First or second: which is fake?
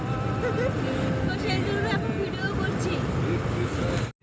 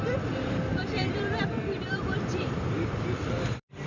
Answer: second